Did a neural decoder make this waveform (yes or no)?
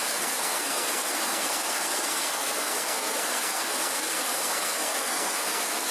yes